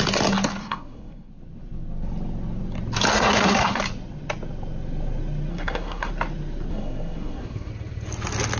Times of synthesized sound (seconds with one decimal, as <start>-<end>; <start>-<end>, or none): 0.6-1.3; 3.1-3.8; 5.5-6.1; 6.7-7.7